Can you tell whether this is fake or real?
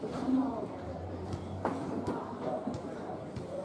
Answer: fake